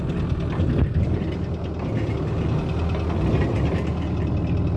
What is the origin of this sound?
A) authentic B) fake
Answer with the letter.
A